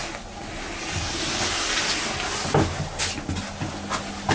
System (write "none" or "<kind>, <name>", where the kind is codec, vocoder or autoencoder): none